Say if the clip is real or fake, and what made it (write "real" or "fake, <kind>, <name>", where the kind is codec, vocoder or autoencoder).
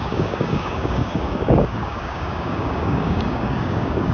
fake, codec, DAC